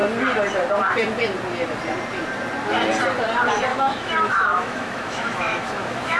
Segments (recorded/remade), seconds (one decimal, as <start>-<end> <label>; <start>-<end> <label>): 0.0-3.7 recorded; 3.7-6.2 remade